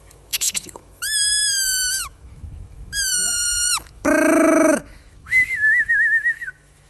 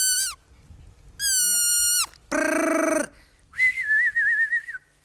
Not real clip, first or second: first